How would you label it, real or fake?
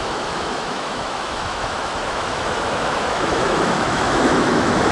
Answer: fake